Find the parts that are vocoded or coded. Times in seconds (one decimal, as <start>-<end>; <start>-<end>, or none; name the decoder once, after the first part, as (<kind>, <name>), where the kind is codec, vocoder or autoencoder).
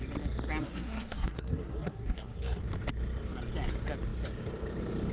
0.6-2.6 (codec, SNAC)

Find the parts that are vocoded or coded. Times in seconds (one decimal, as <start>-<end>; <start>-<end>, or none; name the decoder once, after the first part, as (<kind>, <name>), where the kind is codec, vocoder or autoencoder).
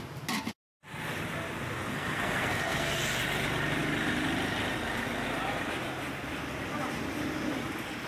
1.9-3.0 (codec, SNAC)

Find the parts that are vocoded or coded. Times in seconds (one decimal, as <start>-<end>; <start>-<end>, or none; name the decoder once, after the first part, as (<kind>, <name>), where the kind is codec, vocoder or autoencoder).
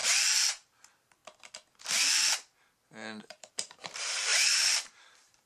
0.5-1.2 (vocoder, BigVGAN v2); 3.2-5.5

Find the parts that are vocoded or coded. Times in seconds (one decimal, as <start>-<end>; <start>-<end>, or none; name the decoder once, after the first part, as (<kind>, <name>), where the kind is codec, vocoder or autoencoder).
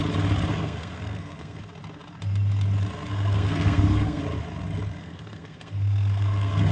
0.5-1.6 (codec, SNAC); 3.1-4.2; 5.0-6.7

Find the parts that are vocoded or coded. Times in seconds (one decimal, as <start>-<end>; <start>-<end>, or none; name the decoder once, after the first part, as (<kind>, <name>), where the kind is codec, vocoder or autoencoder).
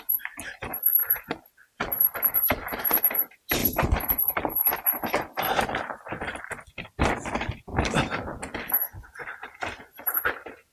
none